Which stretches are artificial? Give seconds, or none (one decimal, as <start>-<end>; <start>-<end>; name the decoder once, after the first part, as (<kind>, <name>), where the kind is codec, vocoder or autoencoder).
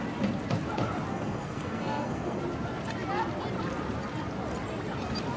1.1-2.4 (codec, SNAC)